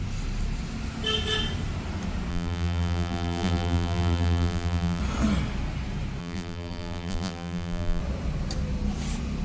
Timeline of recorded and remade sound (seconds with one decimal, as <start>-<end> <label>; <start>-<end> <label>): 0.0-2.3 recorded; 2.3-5.0 remade; 5.0-6.2 recorded; 6.2-8.0 remade; 8.0-9.4 recorded